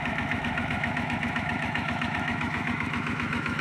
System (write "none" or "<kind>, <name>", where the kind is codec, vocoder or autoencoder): autoencoder, DAC-VAE